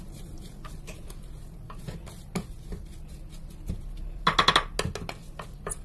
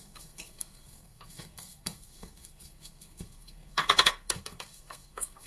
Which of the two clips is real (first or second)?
first